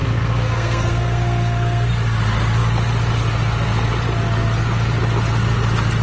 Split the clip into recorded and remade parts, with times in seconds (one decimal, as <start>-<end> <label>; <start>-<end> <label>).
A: 0.0-1.9 remade; 1.9-6.0 recorded